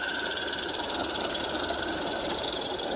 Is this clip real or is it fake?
fake